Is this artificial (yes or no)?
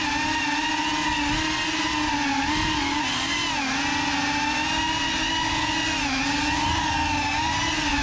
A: no